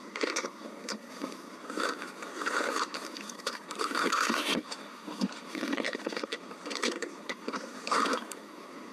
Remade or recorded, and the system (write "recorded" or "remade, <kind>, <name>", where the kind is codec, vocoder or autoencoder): remade, codec, SNAC